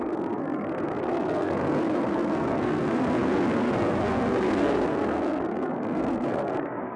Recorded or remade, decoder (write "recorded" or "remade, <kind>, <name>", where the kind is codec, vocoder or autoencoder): remade, codec, SNAC